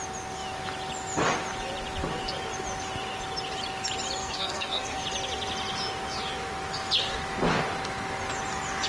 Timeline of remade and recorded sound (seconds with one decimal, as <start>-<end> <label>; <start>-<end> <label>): 0.0-4.2 recorded; 4.2-5.0 remade; 5.0-8.9 recorded